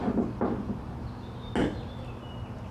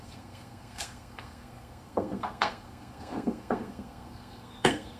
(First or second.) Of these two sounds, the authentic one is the first